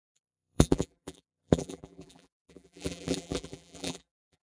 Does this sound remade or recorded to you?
remade